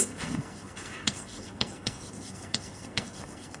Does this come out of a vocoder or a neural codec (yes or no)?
yes